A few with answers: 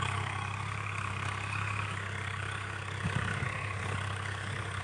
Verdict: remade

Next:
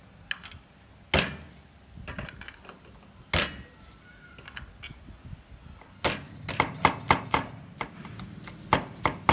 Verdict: recorded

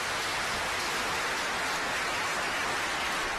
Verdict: recorded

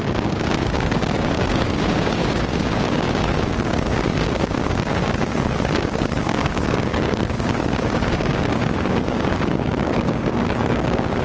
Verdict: remade